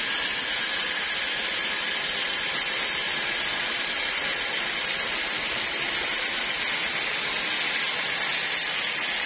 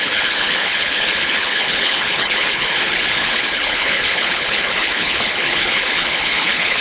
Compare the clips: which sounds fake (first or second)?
second